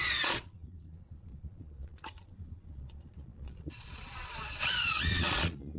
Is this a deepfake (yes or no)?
yes